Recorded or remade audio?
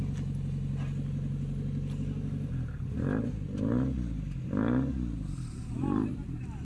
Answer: recorded